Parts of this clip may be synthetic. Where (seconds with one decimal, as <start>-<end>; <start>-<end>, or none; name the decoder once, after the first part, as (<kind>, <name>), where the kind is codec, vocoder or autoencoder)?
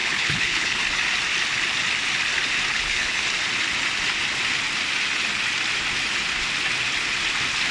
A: 0.0-0.8 (codec, HILCodec); 2.7-3.2